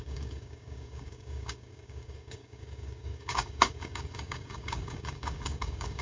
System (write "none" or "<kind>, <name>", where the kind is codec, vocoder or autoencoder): codec, DAC